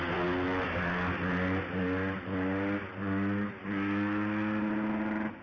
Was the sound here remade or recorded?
recorded